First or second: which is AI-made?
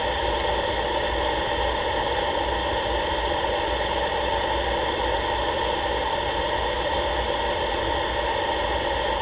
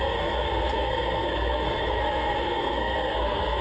second